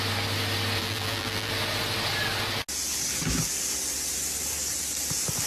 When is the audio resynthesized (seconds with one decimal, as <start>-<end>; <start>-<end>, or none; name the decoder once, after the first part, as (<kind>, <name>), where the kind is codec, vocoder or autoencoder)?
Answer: 0.8-1.5 (vocoder, BigVGAN v2)